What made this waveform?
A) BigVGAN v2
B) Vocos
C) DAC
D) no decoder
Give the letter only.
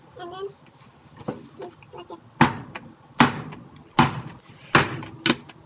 D